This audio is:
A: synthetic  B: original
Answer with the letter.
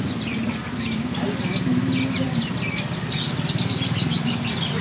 B